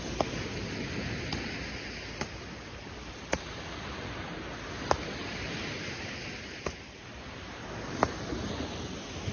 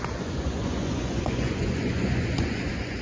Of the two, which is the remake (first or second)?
second